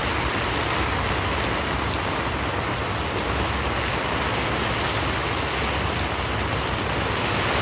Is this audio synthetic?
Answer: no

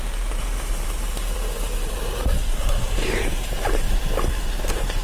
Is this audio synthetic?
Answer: yes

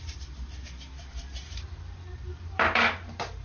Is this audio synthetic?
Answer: yes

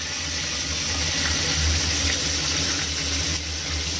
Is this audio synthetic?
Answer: no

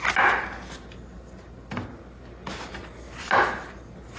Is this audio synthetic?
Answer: no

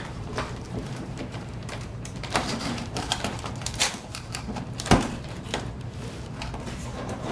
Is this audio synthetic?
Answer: yes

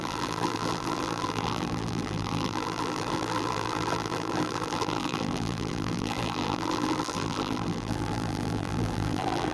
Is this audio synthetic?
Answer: yes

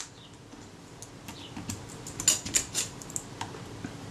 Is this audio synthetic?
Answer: no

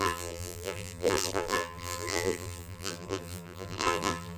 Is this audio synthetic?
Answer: yes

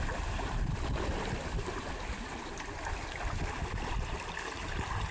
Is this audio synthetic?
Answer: no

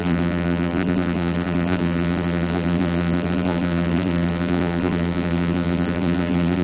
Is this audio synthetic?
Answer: yes